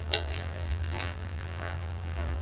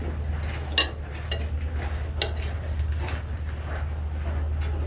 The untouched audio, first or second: second